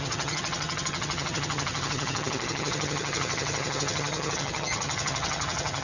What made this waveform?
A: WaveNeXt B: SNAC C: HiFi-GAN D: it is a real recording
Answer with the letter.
C